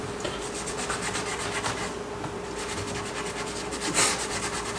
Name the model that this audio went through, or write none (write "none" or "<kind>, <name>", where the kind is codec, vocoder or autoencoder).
none